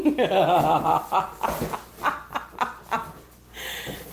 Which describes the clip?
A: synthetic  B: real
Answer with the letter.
B